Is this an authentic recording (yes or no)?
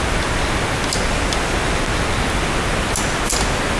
yes